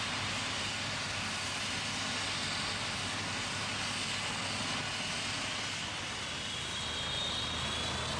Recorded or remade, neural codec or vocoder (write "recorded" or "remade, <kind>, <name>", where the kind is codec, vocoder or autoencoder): recorded